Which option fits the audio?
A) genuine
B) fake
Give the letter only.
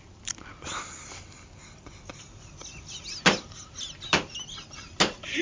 A